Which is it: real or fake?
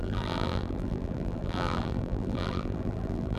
fake